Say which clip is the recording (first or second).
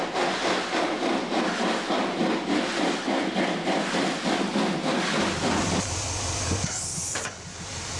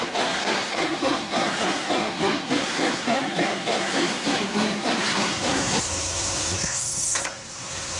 first